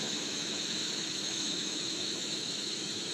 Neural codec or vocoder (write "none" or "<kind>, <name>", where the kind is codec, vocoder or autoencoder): autoencoder, DAC-VAE